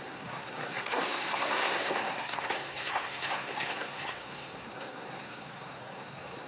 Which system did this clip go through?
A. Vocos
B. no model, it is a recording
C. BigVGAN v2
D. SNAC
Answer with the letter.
D